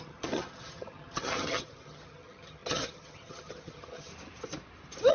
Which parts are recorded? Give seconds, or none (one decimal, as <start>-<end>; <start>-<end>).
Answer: 4.1-5.1